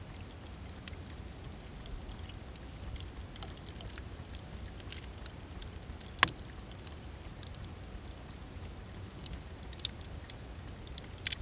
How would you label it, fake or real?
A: real